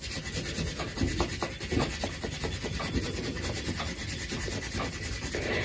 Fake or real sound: real